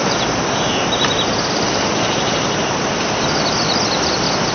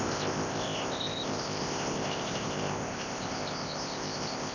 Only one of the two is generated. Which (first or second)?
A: second